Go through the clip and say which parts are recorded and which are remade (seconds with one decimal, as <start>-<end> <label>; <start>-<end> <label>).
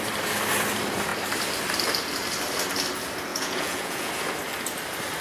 0.0-3.3 recorded; 3.3-4.1 remade; 4.1-5.2 recorded